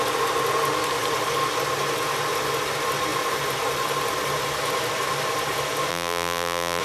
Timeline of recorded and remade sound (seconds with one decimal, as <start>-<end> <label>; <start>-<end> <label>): 0.0-5.9 recorded; 5.9-6.8 remade